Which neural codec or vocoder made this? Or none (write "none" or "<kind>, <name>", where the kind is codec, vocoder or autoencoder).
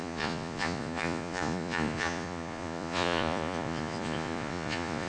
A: vocoder, Vocos